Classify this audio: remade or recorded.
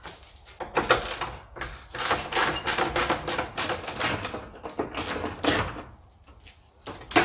recorded